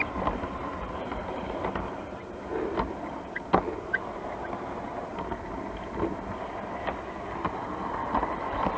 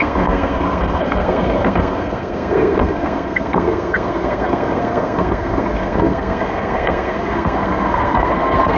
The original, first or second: first